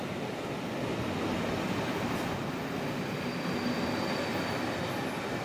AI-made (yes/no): no